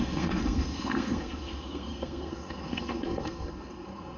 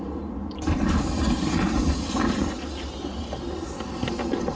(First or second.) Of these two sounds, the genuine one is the second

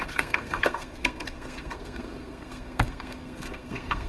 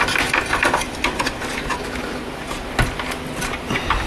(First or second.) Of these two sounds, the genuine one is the second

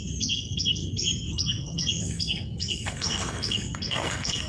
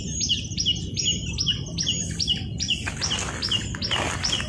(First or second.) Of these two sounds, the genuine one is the second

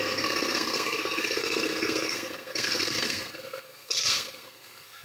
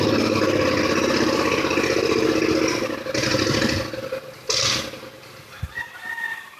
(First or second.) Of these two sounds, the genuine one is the second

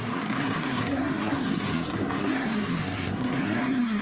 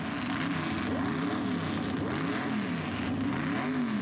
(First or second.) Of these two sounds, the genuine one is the second